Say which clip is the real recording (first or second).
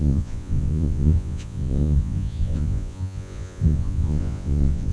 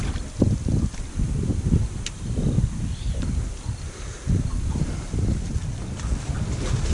second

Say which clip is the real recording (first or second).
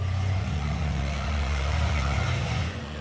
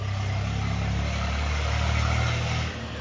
second